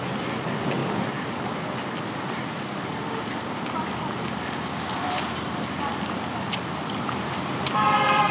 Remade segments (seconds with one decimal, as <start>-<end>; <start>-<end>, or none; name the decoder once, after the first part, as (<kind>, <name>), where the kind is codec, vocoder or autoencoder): none